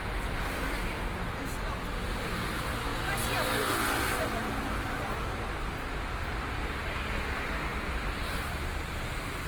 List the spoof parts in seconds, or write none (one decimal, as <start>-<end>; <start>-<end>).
7.7-8.8